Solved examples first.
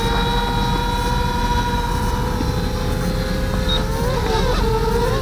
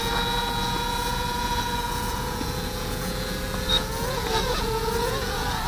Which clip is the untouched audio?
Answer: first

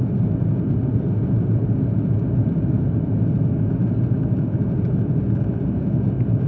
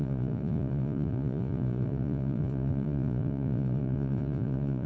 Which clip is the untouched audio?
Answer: first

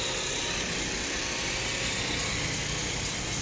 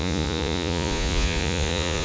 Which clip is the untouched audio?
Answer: first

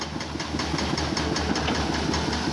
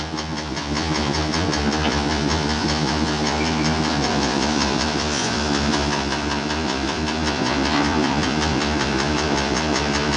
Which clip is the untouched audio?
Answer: first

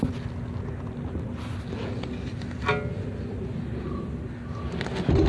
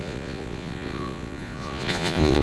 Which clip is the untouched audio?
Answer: first